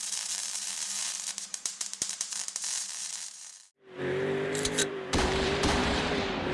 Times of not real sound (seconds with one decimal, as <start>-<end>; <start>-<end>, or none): 0.0-6.5